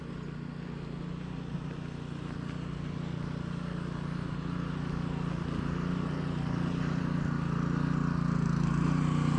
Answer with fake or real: real